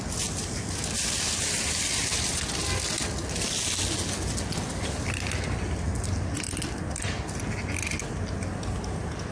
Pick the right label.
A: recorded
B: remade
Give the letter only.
A